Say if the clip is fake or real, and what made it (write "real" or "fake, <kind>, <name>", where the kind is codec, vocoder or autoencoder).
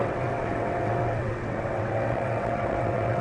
fake, vocoder, WaveNeXt